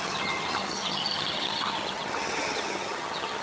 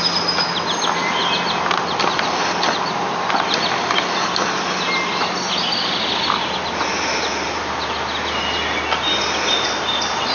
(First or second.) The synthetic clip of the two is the first